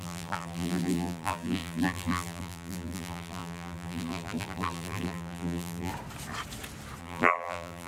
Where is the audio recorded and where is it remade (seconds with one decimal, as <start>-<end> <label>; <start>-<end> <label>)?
0.0-5.9 remade; 5.9-7.0 recorded; 7.0-7.9 remade

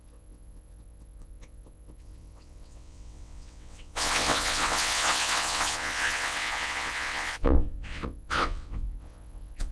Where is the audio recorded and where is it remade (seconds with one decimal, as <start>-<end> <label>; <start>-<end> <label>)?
0.0-9.7 remade

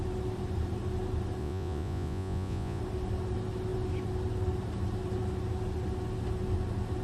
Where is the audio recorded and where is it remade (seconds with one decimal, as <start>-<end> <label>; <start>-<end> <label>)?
0.0-1.4 recorded; 1.4-2.8 remade; 2.8-7.0 recorded

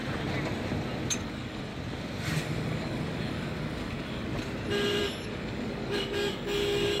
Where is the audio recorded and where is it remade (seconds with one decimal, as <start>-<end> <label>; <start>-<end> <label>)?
0.0-1.1 recorded; 1.1-1.7 remade; 1.7-2.4 recorded; 2.4-4.3 remade; 4.3-5.0 recorded; 5.0-7.0 remade

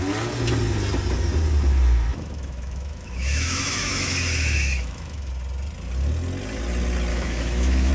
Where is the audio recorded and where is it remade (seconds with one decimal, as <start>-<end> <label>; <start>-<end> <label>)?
0.0-2.1 recorded; 2.1-5.3 remade; 5.3-7.1 recorded; 7.1-7.9 remade